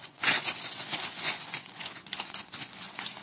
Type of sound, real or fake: fake